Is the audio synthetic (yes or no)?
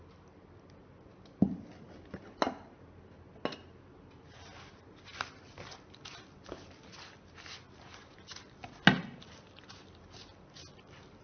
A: no